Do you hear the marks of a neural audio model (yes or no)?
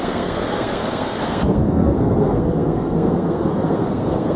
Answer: yes